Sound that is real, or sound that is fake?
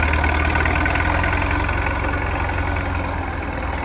real